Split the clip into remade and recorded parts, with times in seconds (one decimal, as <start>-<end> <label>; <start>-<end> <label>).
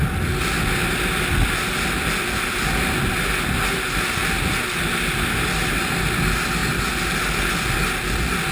0.0-8.5 recorded